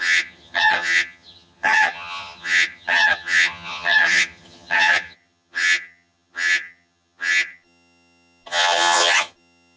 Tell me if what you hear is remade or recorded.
remade